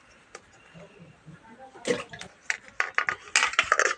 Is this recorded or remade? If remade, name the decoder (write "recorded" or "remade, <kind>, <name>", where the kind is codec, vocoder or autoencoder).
recorded